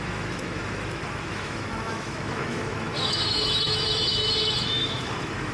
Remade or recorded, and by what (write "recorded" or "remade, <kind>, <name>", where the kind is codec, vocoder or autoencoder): remade, autoencoder, DAC-VAE